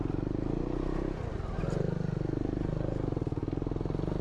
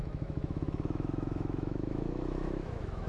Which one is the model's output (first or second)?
second